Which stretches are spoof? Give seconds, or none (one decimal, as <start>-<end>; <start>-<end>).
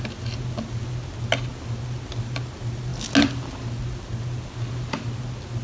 none